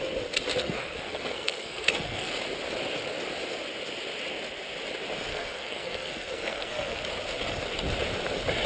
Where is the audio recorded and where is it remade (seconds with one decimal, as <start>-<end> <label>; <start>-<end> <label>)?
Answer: 0.0-0.6 recorded; 0.6-2.3 remade; 2.3-5.3 recorded; 5.3-7.0 remade; 7.0-8.7 recorded